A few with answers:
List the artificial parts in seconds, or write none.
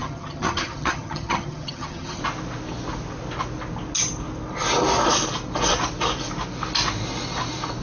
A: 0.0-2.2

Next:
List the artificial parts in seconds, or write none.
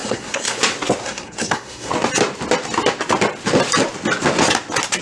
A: 0.0-0.6; 1.0-1.9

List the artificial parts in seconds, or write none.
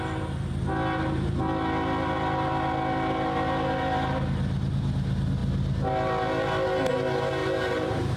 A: 7.4-8.2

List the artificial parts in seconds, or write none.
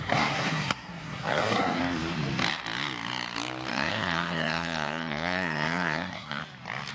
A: 0.0-1.8; 3.7-6.4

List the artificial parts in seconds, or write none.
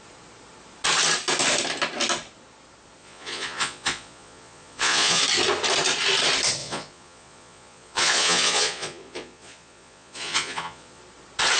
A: 3.0-5.2; 6.6-11.0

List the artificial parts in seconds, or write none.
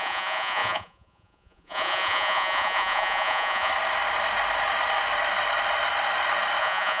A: 0.0-3.7; 6.6-7.0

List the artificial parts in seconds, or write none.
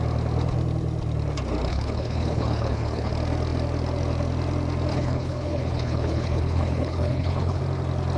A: 1.7-3.1; 4.9-7.6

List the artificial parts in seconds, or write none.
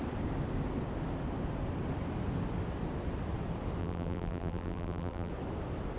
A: 3.8-5.3